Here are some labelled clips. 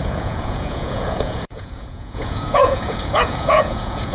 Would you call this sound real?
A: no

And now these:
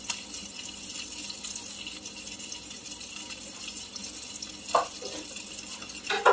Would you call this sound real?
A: yes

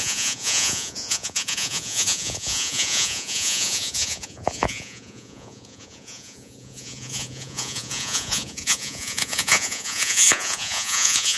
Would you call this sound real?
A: no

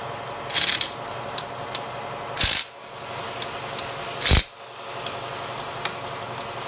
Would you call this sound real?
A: yes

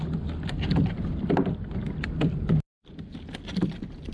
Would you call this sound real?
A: yes